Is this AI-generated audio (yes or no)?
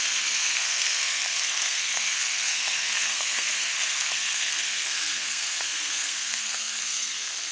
yes